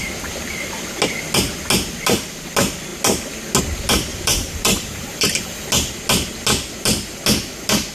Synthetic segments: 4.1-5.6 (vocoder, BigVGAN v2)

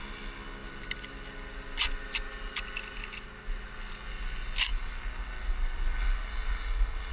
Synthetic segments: none

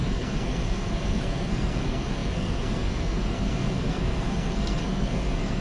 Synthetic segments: 0.0-5.6 (codec, SNAC)

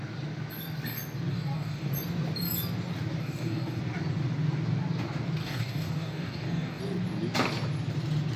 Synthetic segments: 1.3-1.9 (codec, DAC); 3.2-3.8; 5.4-6.8

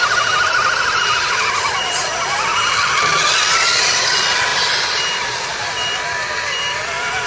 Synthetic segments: none

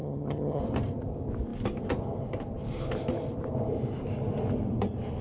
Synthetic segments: 0.0-0.6 (vocoder, HiFi-GAN)